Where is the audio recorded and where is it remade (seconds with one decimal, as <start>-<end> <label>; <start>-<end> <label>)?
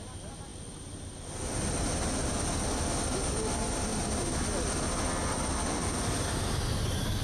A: 0.0-7.2 recorded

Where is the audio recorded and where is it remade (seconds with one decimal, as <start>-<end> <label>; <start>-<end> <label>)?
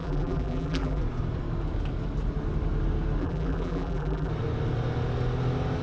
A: 0.0-1.0 remade; 1.0-3.2 recorded; 3.2-4.3 remade; 4.3-5.8 recorded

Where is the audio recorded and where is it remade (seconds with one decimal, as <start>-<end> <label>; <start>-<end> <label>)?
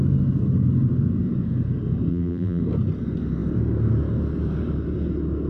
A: 0.0-2.1 recorded; 2.1-2.6 remade; 2.6-5.5 recorded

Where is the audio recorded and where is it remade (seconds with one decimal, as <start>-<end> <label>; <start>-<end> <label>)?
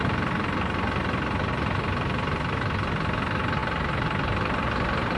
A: 0.0-3.6 recorded; 3.6-5.2 remade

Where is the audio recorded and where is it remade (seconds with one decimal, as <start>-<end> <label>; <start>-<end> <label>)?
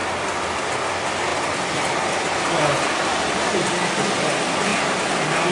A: 0.0-5.5 recorded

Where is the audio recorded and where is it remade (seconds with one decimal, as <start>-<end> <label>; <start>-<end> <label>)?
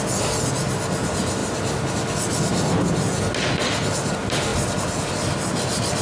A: 0.0-1.4 recorded; 1.4-1.9 remade; 1.9-6.0 recorded